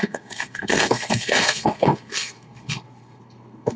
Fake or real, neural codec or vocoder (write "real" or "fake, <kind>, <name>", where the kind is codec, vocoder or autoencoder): fake, codec, SNAC